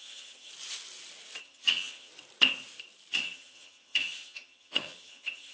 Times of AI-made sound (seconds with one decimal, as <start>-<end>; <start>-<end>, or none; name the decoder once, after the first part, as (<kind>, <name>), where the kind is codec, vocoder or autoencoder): 0.0-0.5 (vocoder, HiFi-GAN); 1.4-2.1; 3.1-5.5